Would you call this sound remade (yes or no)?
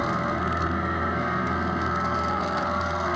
yes